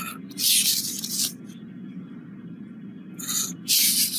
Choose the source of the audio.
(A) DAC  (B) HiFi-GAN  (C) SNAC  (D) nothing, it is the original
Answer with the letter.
D